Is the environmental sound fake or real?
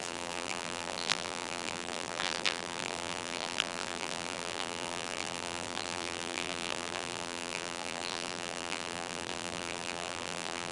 fake